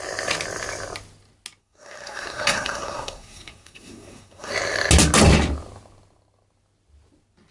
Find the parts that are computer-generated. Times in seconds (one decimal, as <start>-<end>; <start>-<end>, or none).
1.6-4.5